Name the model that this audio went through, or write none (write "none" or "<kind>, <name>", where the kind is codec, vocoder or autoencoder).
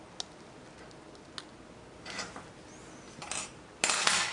none